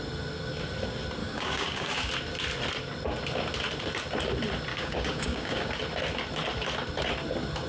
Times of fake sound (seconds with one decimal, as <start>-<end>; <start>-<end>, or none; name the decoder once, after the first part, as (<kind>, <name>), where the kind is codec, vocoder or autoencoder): 1.2-2.1 (codec, DAC); 4.7-5.7